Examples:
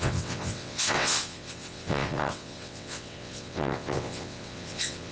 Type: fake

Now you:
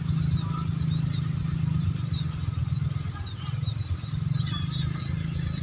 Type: real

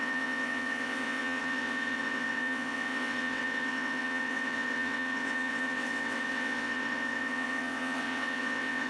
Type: fake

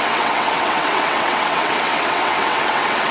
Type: fake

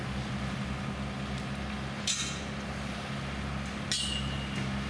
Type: real